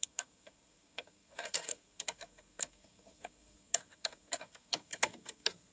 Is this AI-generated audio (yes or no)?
yes